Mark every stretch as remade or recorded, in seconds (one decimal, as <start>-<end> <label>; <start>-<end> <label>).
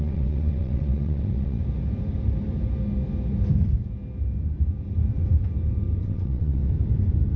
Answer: 0.0-1.6 remade; 1.6-6.0 recorded; 6.0-6.6 remade; 6.6-7.4 recorded